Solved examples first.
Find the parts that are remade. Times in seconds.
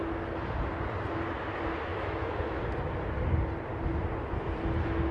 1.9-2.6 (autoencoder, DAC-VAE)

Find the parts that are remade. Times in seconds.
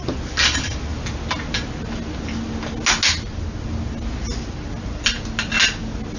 none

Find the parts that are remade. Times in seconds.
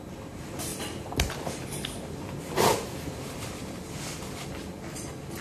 2.7-5.4 (vocoder, BigVGAN v2)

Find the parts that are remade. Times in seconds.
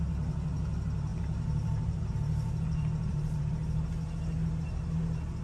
1.1-3.5 (vocoder, BigVGAN v2)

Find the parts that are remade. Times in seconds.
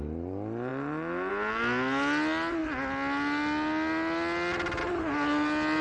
none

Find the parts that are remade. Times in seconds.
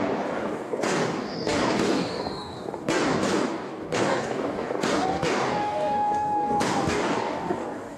0.0-8.0 (codec, DAC)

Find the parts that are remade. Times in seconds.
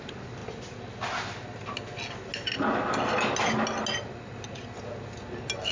none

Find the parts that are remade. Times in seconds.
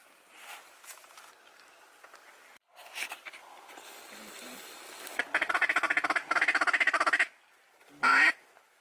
none